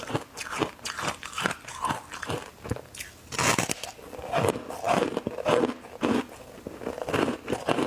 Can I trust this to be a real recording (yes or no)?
yes